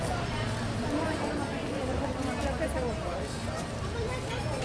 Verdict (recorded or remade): recorded